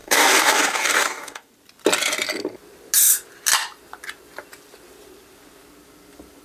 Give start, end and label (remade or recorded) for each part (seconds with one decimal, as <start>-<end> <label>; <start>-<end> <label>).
0.0-1.5 remade; 1.5-6.4 recorded